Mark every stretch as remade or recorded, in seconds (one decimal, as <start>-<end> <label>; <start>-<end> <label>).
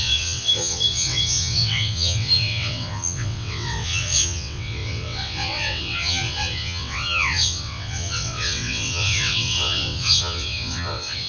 0.0-11.3 remade